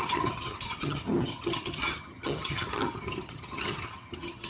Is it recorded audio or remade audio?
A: remade